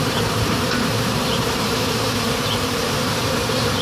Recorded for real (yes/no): no